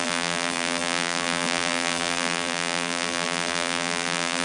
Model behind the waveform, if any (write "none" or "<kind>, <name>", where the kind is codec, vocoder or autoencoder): vocoder, BigVGAN v2